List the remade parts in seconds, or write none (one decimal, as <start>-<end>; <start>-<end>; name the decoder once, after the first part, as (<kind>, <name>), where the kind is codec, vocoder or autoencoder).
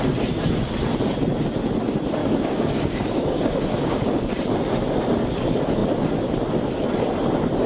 2.2-4.3 (codec, DAC)